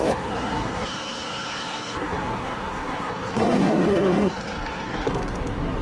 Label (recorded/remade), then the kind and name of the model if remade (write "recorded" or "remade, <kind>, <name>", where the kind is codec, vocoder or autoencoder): remade, codec, SNAC